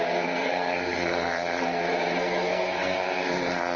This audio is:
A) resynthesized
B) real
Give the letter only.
A